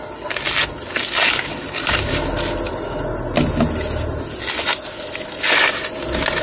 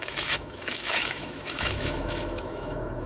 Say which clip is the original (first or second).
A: first